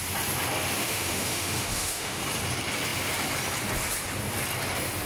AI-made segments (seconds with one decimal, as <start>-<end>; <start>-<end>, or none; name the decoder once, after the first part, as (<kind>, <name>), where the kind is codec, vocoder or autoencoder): 0.8-2.2 (autoencoder, DAC-VAE)